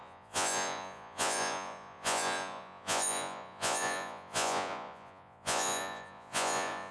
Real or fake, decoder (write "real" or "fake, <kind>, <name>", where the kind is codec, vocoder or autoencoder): fake, vocoder, Vocos